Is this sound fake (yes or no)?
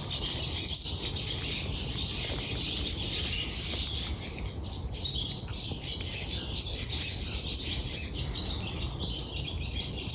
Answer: no